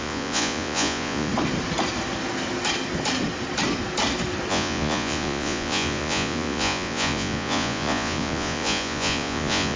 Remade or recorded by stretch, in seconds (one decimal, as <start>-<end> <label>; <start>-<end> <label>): 0.0-1.3 remade; 1.3-4.5 recorded; 4.5-9.8 remade